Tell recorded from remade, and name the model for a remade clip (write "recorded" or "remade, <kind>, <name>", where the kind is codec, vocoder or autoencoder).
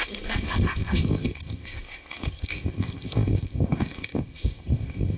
remade, codec, ZipCodec